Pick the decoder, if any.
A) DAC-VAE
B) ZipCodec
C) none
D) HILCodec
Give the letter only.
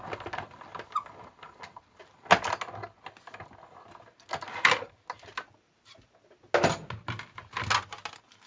C